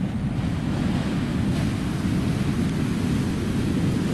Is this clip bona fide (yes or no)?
yes